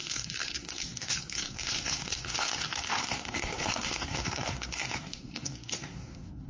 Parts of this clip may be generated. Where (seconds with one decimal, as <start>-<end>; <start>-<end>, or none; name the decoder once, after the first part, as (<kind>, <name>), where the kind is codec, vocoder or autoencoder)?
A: 0.0-6.5 (codec, SNAC)